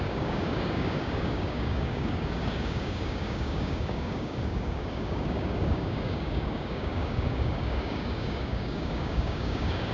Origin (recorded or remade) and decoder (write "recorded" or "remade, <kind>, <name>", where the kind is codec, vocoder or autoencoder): remade, codec, DAC